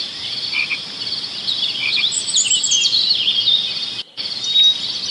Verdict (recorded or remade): recorded